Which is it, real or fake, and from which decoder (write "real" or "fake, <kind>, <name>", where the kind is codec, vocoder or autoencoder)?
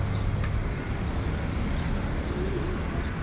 real